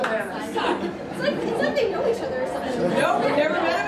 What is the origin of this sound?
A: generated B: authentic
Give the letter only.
B